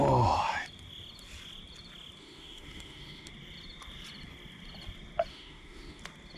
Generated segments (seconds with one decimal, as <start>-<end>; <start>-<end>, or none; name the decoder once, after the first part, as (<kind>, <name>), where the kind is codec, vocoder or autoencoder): 2.2-3.3 (autoencoder, DAC-VAE); 5.3-6.0